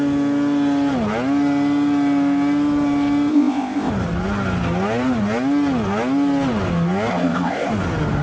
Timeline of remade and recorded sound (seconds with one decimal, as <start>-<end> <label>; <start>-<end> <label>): 0.0-3.3 recorded; 3.3-3.9 remade; 3.9-7.1 recorded; 7.1-7.7 remade; 7.7-8.2 recorded